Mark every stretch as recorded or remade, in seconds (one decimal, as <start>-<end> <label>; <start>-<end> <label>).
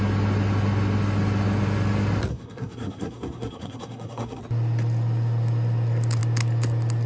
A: 0.0-2.3 recorded; 2.3-4.4 remade; 4.4-7.1 recorded